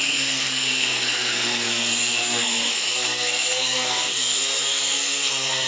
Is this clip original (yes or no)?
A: no